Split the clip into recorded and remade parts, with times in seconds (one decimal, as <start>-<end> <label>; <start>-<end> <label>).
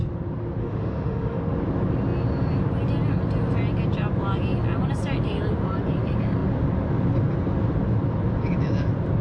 0.0-0.6 recorded; 0.6-1.4 remade; 1.4-9.2 recorded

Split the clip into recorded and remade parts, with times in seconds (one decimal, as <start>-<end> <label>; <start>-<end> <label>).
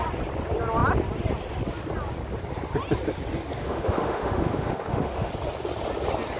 0.0-3.6 recorded; 3.6-5.3 remade; 5.3-6.4 recorded